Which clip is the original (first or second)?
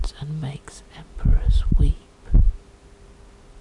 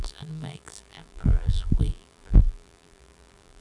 first